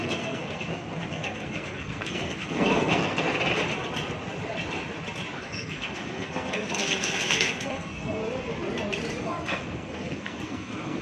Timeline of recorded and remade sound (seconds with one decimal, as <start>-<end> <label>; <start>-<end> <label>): 0.0-3.3 remade; 3.3-5.4 recorded; 5.4-8.2 remade; 8.2-9.2 recorded; 9.2-11.0 remade